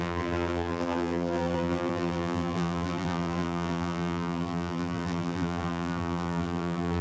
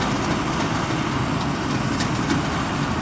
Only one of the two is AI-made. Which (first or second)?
first